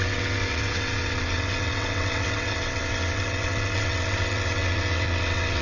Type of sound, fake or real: fake